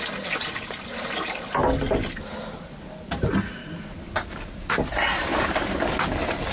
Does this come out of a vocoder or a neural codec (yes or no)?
no